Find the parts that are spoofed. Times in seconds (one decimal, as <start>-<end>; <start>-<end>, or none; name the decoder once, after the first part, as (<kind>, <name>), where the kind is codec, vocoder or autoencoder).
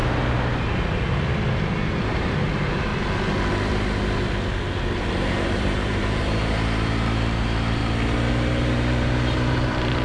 1.9-2.9 (vocoder, BigVGAN v2); 5.3-7.8; 8.3-10.0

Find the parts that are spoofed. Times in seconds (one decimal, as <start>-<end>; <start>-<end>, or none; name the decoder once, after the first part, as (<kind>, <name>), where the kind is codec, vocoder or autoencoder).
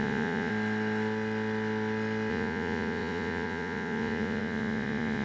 0.0-0.5 (vocoder, Vocos); 2.3-5.2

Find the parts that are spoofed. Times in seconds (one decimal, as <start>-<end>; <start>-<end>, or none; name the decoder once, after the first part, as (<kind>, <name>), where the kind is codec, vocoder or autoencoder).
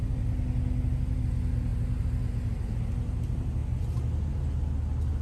none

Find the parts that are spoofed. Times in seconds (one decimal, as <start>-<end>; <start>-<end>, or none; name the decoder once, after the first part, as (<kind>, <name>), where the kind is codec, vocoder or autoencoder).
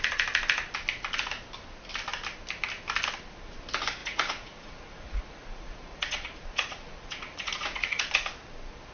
4.0-8.1 (vocoder, Vocos)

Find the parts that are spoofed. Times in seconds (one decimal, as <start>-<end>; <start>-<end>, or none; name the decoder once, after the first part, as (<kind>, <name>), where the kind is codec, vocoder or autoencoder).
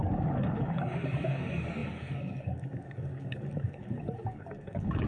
0.0-5.1 (codec, DAC)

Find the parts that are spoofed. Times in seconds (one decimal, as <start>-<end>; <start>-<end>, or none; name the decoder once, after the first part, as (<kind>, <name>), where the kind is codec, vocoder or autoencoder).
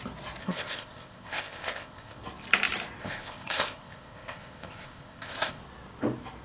0.4-2.2 (codec, ZipCodec); 3.0-5.6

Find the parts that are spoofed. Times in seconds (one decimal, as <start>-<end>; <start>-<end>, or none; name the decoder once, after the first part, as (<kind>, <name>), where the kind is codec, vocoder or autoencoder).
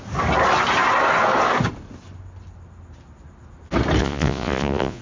4.0-5.0 (vocoder, Vocos)